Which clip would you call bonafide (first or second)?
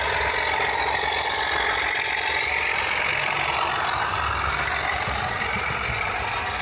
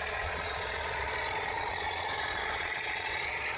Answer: first